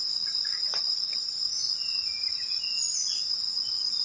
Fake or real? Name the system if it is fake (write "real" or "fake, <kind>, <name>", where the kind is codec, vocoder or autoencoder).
fake, vocoder, Vocos